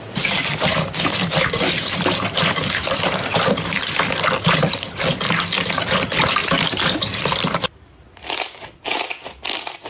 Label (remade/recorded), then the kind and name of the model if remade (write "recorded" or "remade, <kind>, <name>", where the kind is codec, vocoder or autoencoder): remade, vocoder, BigVGAN v2